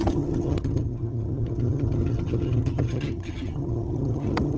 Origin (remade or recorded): remade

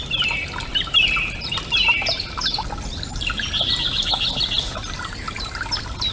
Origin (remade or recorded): recorded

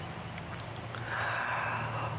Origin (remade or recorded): recorded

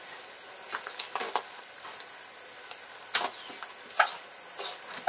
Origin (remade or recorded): recorded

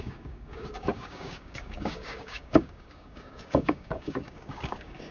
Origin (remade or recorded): remade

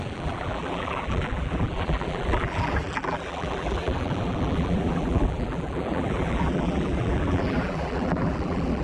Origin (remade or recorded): remade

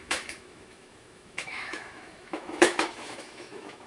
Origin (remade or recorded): remade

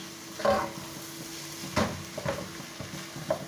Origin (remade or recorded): recorded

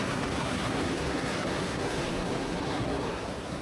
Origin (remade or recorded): remade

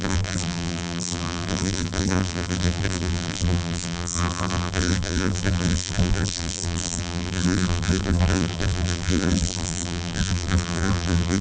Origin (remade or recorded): remade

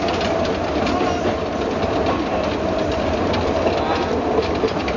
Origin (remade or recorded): recorded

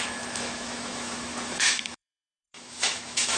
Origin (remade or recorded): remade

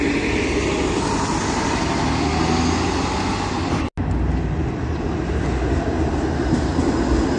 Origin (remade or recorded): recorded